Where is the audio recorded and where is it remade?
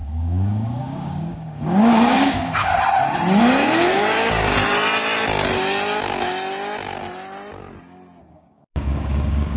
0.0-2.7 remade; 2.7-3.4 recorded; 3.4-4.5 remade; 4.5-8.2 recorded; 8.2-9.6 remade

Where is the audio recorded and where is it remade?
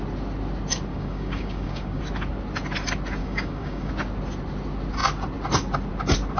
0.0-0.9 recorded; 0.9-2.0 remade; 2.0-3.2 recorded; 3.2-3.9 remade; 3.9-6.4 recorded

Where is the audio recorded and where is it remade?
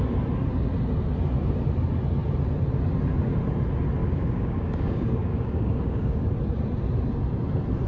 0.0-4.0 recorded; 4.0-6.3 remade; 6.3-7.9 recorded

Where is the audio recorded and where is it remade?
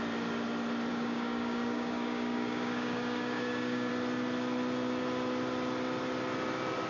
0.0-0.9 recorded; 0.9-3.9 remade; 3.9-6.9 recorded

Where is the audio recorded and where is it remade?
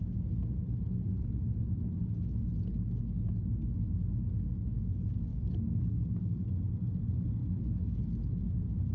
0.0-5.3 recorded; 5.3-6.4 remade; 6.4-7.4 recorded; 7.4-8.0 remade; 8.0-8.9 recorded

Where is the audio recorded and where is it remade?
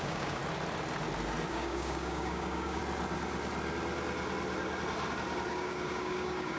0.0-0.4 remade; 0.4-1.5 recorded; 1.5-2.8 remade; 2.8-5.5 recorded; 5.5-6.6 remade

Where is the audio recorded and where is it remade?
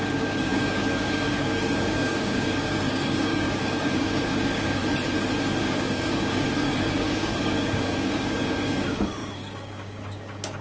0.0-4.8 remade; 4.8-5.6 recorded; 5.6-10.6 remade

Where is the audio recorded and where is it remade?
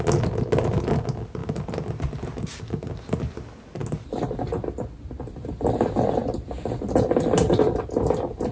0.0-8.5 recorded